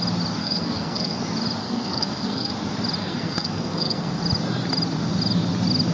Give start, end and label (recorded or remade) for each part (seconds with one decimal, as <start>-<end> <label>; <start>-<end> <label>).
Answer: 0.0-0.4 recorded; 0.4-1.2 remade; 1.2-1.6 recorded; 1.6-2.5 remade; 2.5-3.0 recorded; 3.0-4.2 remade; 4.2-5.9 recorded